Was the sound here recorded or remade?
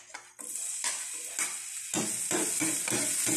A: recorded